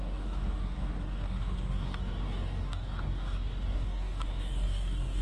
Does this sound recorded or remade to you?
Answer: remade